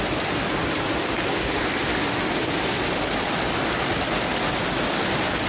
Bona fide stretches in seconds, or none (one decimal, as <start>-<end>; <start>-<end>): 0.0-5.5

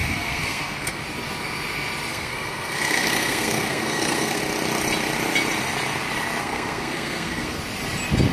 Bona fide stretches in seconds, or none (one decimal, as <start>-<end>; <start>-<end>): 1.0-2.1; 4.4-6.4; 7.6-8.3

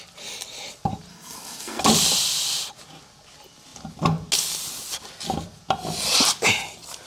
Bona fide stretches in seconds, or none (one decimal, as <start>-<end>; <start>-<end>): 0.0-1.1; 1.8-7.1

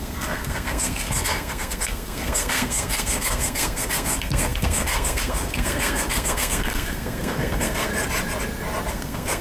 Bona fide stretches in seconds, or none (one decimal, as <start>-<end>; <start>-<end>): 7.9-8.9

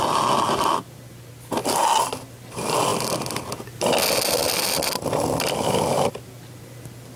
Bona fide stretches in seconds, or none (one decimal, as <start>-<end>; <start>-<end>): 0.0-7.2